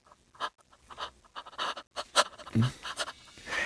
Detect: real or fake real